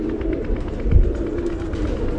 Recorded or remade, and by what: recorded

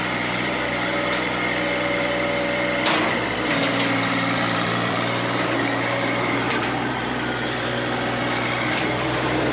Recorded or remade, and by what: remade, vocoder, BigVGAN v2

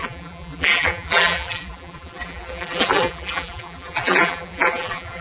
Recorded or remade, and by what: remade, vocoder, BigVGAN v2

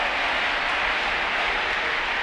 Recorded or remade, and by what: remade, vocoder, BigVGAN v2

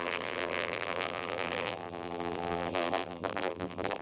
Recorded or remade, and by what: remade, vocoder, BigVGAN v2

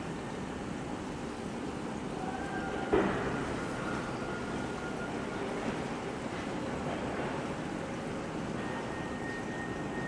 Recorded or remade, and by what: recorded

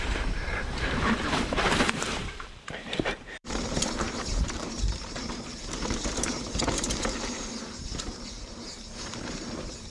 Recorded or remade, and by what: remade, vocoder, BigVGAN v2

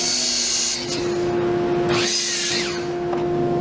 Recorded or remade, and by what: recorded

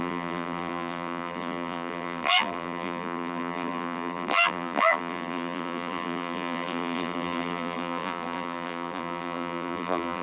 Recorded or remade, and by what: remade, vocoder, BigVGAN v2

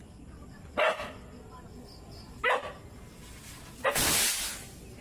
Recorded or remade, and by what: recorded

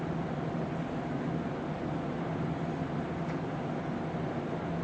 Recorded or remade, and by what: recorded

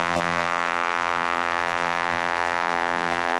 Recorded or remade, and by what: remade, vocoder, BigVGAN v2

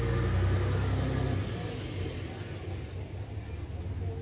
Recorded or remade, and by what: recorded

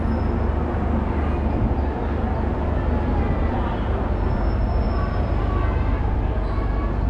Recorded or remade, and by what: recorded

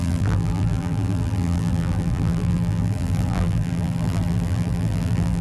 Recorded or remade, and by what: remade, vocoder, BigVGAN v2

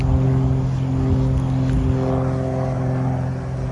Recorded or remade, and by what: recorded